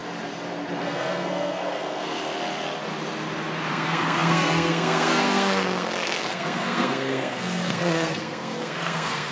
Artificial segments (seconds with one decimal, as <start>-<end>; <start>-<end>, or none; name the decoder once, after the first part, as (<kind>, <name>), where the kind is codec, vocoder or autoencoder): 0.8-2.2 (codec, SNAC); 3.7-9.3

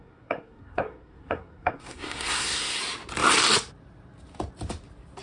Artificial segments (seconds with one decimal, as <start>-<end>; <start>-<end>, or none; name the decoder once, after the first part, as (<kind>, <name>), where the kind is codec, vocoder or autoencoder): 0.0-2.8 (codec, SNAC)

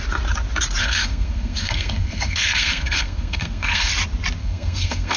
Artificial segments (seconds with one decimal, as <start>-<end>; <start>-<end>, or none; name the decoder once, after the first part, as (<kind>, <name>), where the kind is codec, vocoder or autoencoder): 0.8-3.9 (codec, SNAC); 4.4-5.2

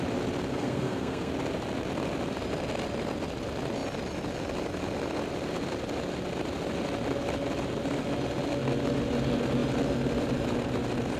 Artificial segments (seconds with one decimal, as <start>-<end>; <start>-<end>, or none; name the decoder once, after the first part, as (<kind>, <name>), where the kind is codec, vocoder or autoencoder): 0.5-1.3 (codec, SNAC)